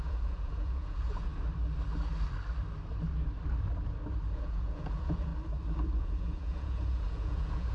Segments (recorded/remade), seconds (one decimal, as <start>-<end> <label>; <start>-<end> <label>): 0.0-1.3 remade; 1.3-4.3 recorded; 4.3-5.3 remade; 5.3-6.0 recorded; 6.0-7.7 remade